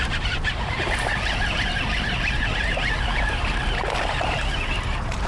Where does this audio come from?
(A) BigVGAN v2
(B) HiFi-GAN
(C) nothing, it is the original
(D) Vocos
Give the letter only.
A